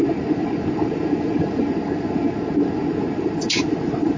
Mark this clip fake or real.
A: real